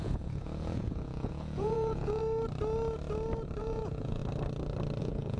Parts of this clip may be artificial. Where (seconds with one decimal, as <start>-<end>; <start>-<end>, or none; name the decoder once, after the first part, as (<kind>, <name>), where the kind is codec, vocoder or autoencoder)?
0.0-2.2 (vocoder, Vocos); 3.6-4.2; 5.0-5.4